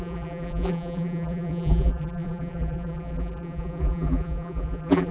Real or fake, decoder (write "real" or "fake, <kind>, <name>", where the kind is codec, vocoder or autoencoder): fake, vocoder, BigVGAN v2